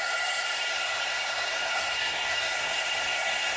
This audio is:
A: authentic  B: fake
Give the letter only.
B